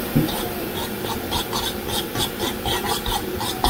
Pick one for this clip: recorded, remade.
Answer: recorded